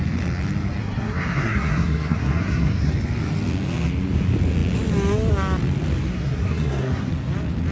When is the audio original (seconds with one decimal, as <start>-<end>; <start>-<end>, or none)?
0.0-0.8; 2.9-6.1; 7.1-7.7